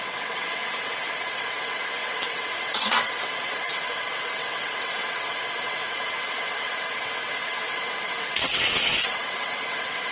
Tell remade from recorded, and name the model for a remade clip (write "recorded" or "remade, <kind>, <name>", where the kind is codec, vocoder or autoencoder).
remade, vocoder, WaveNeXt